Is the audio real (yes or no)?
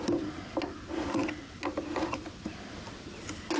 yes